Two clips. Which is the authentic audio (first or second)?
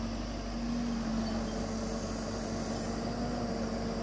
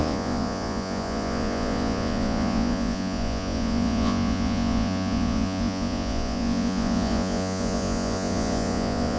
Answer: first